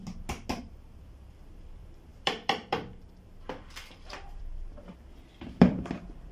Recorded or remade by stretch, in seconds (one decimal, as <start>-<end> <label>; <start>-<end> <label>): 0.0-0.6 recorded; 0.6-6.3 remade